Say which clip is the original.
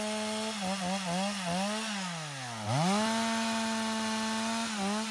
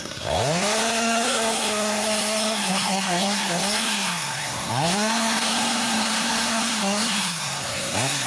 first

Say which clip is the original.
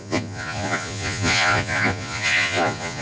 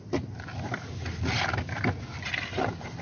second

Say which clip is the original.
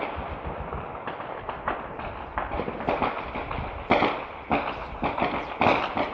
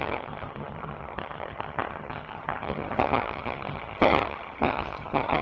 first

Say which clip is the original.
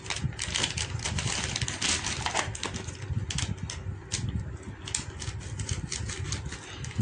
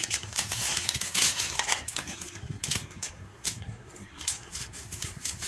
first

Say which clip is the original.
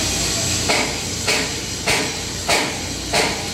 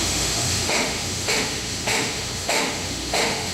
first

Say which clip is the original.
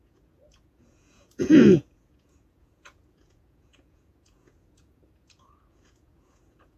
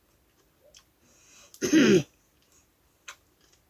second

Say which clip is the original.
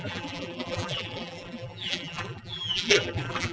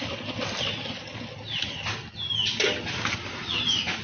second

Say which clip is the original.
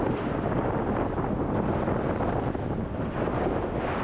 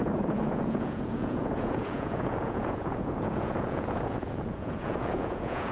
first